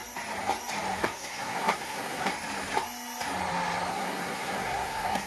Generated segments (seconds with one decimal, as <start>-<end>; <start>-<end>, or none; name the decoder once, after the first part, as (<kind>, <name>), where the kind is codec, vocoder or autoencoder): 1.0-2.3 (codec, SNAC); 3.9-5.3